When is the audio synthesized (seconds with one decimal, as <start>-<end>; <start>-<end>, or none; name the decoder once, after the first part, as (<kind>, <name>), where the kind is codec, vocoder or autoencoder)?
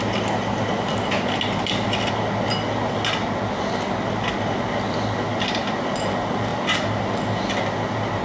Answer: none